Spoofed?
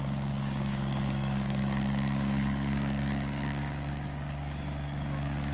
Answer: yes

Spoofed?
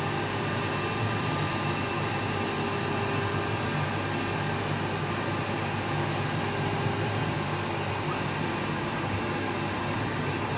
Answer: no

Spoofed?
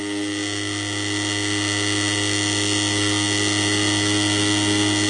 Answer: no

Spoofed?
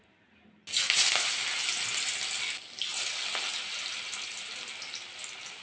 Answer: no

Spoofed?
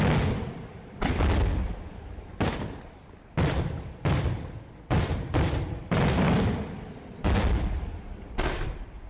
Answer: no